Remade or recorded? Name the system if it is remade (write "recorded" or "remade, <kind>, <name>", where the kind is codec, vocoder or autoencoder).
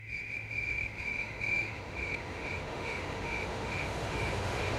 remade, autoencoder, DAC-VAE